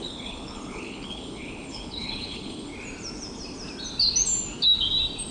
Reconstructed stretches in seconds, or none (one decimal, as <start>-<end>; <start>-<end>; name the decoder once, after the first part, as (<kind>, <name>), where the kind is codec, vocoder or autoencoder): 0.0-2.7 (codec, HILCodec)